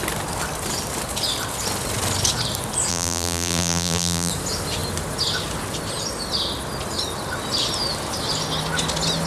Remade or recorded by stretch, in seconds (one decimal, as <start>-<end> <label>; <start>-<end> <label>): 0.0-2.9 recorded; 2.9-4.3 remade; 4.3-9.3 recorded